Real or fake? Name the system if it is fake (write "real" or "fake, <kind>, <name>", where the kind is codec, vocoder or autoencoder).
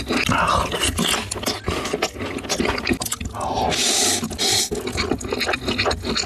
real